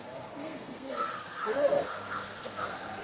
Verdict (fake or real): fake